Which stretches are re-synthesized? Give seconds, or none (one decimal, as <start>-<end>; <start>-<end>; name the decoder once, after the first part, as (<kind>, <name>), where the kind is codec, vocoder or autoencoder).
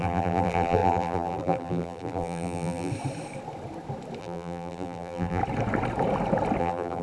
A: 0.0-2.9 (vocoder, BigVGAN v2); 4.2-5.4; 6.6-7.0